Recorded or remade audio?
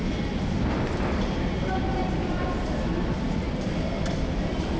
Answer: recorded